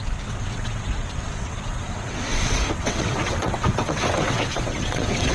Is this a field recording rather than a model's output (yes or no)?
no